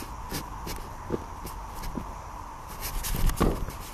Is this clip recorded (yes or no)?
yes